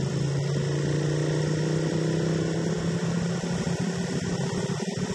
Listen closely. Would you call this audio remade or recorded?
recorded